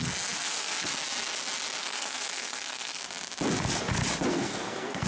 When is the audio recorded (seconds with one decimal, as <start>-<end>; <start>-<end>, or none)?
0.9-1.8; 3.0-4.3